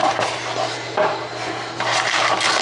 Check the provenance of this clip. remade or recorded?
recorded